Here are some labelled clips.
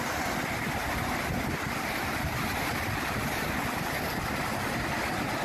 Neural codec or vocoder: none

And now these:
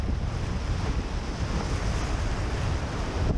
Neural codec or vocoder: none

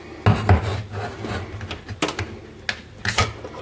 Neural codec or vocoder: none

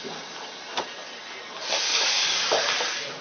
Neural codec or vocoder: none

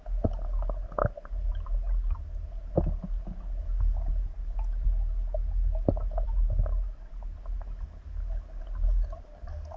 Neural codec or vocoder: none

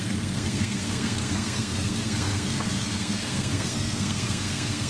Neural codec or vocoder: codec, SNAC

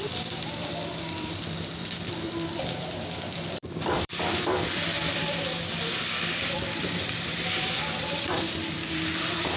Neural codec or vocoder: vocoder, BigVGAN v2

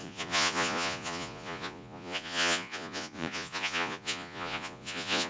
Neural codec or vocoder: vocoder, Vocos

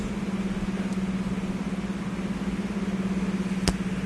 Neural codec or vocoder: none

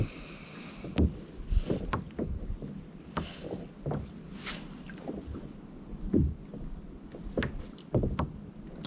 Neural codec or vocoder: none